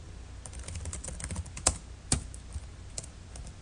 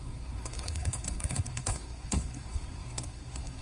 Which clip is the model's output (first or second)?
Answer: second